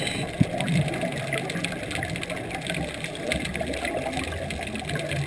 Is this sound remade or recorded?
recorded